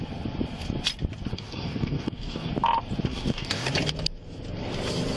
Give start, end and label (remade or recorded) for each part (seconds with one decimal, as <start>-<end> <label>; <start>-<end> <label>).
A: 0.0-1.3 recorded; 1.3-2.5 remade; 2.5-3.1 recorded; 3.1-3.7 remade; 3.7-5.2 recorded